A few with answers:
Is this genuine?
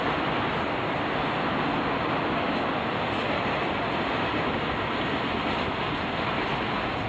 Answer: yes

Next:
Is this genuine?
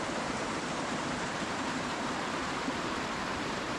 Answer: no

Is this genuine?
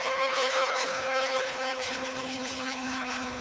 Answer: no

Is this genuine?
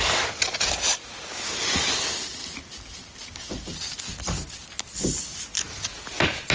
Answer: yes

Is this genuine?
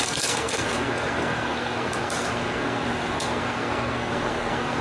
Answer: no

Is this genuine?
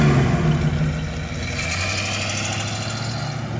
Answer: yes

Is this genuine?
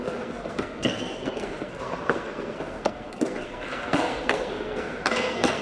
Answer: no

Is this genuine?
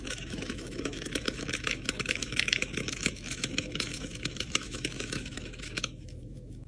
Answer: no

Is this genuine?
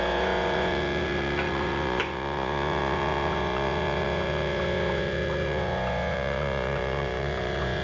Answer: no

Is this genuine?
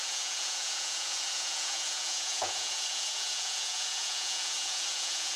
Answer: no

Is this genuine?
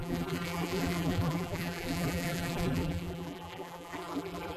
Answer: no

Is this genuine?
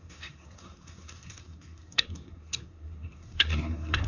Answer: no